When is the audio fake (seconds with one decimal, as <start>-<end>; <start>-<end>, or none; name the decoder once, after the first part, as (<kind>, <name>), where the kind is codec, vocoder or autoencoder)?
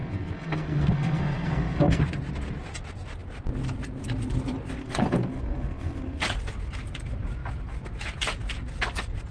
0.0-2.0 (codec, SNAC); 4.8-6.2